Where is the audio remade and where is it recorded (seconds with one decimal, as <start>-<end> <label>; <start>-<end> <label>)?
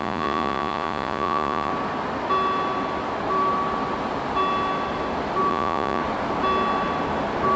0.0-1.7 remade; 1.7-5.5 recorded; 5.5-6.0 remade; 6.0-7.6 recorded